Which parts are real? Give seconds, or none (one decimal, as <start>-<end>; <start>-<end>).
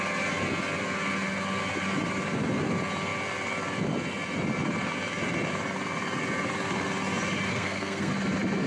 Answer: 0.0-7.5; 8.1-8.7